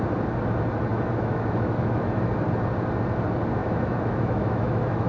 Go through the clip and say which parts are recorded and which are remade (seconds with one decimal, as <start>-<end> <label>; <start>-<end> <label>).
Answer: 0.0-0.9 recorded; 0.9-2.3 remade; 2.3-3.6 recorded; 3.6-5.1 remade